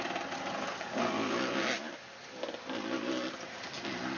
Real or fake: real